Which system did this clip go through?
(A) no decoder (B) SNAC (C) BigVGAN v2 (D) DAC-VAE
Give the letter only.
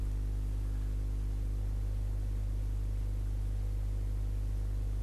A